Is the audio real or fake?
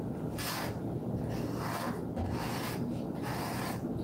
real